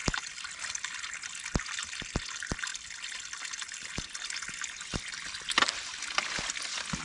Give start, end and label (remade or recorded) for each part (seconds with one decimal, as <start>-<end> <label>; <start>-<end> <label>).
0.0-7.0 recorded